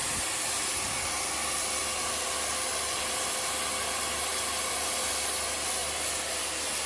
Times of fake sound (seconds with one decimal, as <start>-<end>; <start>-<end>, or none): none